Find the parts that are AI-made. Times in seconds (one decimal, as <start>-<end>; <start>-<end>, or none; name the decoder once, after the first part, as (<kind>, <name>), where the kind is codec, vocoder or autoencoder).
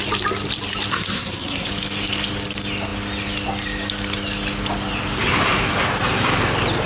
0.9-1.7 (codec, SNAC)